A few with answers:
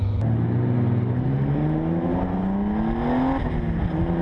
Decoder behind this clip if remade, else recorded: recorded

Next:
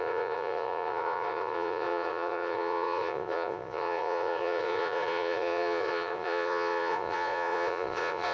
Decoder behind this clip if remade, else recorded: remade, vocoder, Vocos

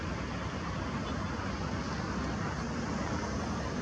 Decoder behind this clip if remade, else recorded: recorded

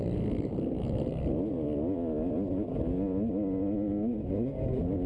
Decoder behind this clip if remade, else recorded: recorded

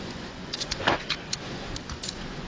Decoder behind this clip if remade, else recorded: remade, vocoder, Vocos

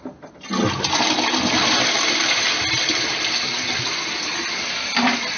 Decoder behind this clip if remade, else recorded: recorded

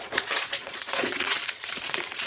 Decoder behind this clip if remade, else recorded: remade, vocoder, Vocos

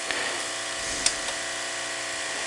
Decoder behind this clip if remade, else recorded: recorded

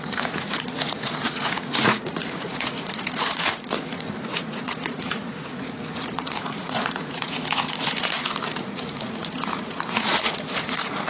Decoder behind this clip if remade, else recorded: remade, vocoder, Vocos